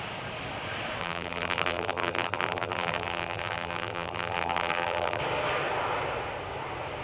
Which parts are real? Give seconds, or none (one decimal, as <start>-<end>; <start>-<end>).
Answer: 0.0-1.0; 5.2-7.0